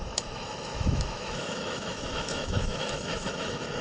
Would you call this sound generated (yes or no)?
yes